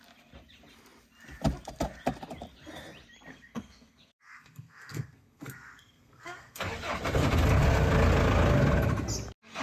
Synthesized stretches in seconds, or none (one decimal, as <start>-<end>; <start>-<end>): 3.3-6.7